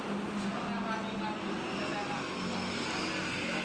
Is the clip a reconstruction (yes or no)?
no